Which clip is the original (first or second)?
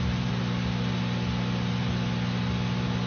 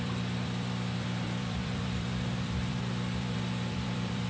first